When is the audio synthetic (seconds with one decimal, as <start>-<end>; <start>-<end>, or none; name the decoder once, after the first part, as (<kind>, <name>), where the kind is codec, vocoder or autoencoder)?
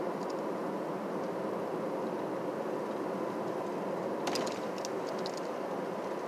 none